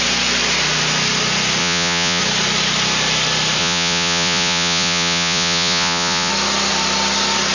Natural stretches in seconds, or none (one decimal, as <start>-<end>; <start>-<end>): 0.0-1.6; 2.2-3.6; 6.3-7.5